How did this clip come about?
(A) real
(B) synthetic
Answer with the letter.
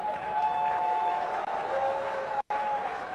B